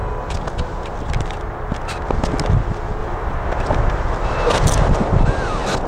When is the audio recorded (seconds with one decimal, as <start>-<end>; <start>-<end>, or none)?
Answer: 0.0-3.0; 4.9-5.9